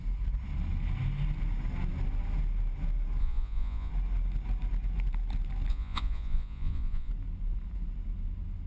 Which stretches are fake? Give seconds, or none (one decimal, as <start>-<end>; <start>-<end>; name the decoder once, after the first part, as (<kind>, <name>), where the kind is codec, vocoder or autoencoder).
3.2-3.9 (vocoder, Vocos); 5.7-7.1